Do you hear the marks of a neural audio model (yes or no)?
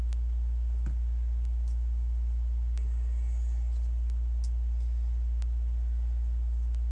no